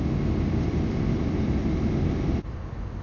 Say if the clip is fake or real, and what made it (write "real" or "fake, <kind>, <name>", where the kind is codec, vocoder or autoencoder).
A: real